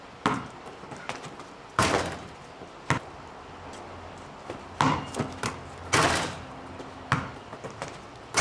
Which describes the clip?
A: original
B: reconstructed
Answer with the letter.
A